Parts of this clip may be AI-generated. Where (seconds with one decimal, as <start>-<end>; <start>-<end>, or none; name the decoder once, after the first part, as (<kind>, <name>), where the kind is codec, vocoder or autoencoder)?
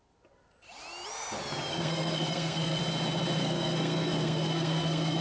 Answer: 1.7-2.8 (codec, SNAC); 3.4-5.2